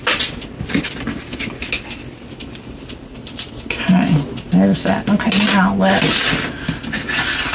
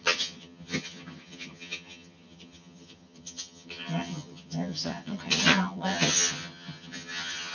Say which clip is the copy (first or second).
second